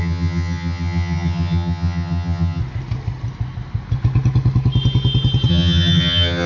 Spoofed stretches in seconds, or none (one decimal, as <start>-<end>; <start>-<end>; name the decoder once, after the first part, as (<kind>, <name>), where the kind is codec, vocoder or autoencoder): 0.0-2.6 (vocoder, HiFi-GAN); 5.5-6.5